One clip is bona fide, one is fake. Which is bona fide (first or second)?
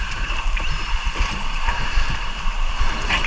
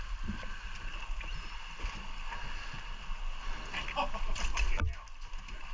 second